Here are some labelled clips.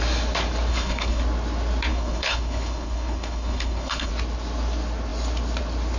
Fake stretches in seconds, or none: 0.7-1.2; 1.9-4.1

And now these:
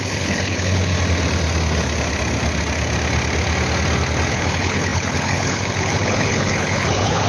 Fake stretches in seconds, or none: 0.0-0.9; 4.3-7.3

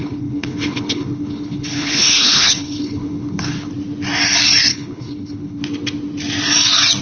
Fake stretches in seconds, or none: 0.0-3.7; 4.7-5.6

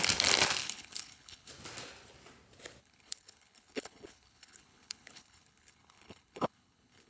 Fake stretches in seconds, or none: 0.6-1.5; 2.8-7.1

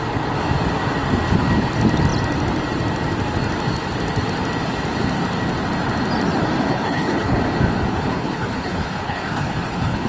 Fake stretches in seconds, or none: 6.7-7.4; 7.9-10.1

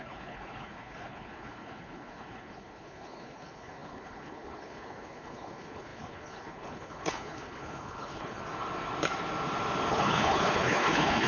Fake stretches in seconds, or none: 0.0-8.4; 9.9-11.3

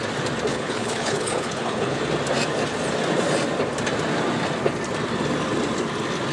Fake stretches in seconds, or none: 0.5-2.0